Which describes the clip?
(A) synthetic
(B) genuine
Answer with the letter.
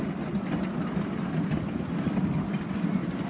B